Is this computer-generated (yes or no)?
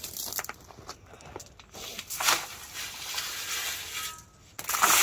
no